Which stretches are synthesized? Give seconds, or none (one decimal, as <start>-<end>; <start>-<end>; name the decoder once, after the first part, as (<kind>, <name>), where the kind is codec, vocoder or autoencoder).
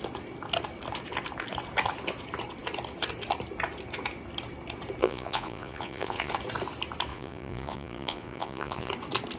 5.0-6.3 (vocoder, Vocos); 7.1-8.9